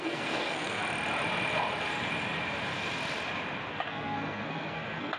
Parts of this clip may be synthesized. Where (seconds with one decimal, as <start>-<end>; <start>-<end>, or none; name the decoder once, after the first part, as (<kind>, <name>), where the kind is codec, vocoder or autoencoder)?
0.0-0.8 (codec, SNAC); 3.7-5.2